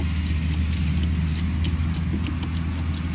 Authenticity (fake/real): real